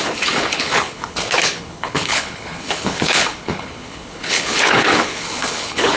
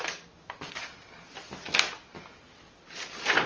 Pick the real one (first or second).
second